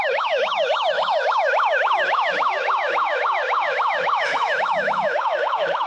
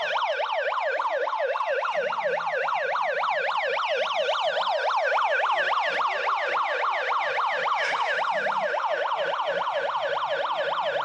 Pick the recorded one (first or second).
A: second